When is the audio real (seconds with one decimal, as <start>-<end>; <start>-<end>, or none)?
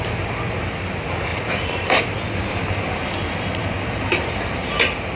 0.0-1.3; 2.0-2.5; 4.8-5.2